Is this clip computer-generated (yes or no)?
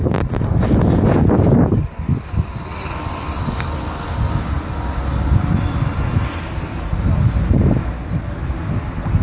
no